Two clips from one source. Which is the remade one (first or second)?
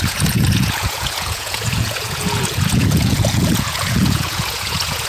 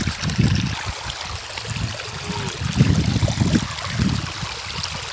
first